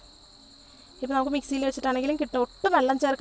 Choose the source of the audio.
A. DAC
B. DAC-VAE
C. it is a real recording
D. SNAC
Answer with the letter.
C